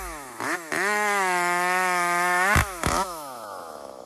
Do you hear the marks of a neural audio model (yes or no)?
yes